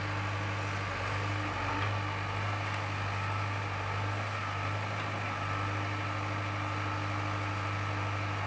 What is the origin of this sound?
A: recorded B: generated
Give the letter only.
A